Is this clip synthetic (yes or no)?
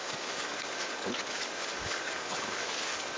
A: yes